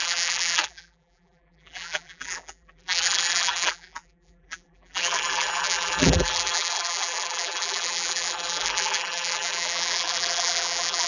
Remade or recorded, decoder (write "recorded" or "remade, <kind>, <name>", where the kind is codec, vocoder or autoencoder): remade, vocoder, BigVGAN v2